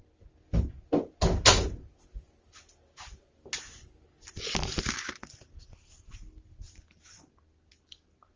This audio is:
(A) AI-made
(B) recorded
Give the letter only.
B